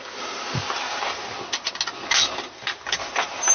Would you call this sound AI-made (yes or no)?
no